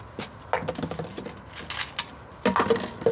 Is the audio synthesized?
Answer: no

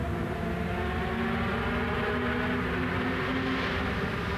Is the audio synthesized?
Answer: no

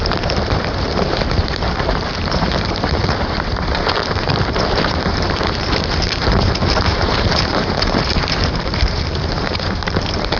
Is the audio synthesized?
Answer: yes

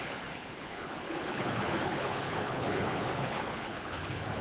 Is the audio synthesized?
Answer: yes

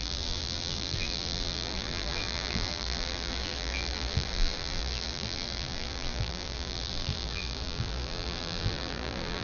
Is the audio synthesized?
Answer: yes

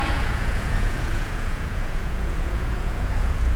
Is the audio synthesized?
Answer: yes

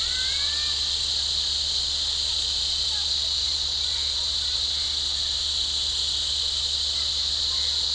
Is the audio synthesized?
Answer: no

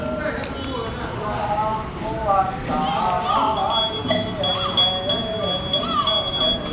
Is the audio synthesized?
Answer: no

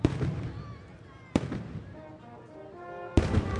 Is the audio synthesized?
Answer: no